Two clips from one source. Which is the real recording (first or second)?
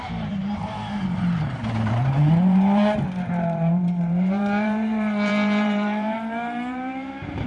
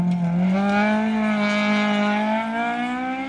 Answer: second